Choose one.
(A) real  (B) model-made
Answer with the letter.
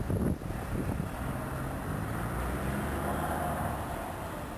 A